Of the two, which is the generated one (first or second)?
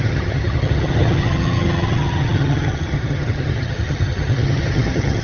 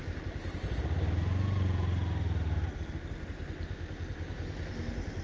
first